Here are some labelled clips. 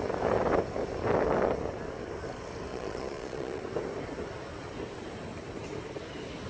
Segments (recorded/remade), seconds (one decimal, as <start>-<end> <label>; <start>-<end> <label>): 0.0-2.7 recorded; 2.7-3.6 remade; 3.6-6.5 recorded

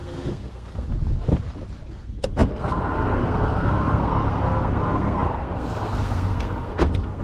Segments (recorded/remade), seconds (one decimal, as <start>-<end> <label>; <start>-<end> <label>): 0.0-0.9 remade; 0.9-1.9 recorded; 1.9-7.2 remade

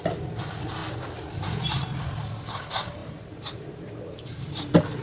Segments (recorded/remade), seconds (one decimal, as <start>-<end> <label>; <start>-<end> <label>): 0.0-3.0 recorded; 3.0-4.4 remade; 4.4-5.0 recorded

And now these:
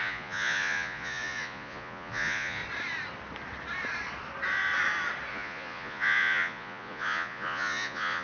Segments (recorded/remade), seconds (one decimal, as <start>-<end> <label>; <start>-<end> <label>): 0.0-2.6 remade; 2.6-5.3 recorded; 5.3-8.2 remade